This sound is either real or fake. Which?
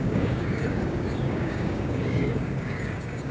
fake